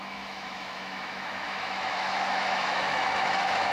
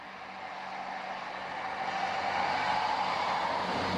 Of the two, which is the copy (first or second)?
first